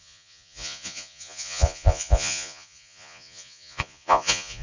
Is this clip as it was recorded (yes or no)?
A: no